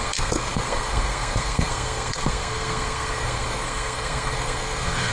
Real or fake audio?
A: fake